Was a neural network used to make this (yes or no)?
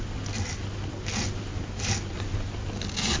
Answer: no